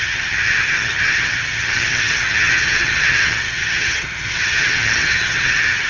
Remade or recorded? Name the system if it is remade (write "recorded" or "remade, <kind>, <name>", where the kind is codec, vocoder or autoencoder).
remade, vocoder, HiFi-GAN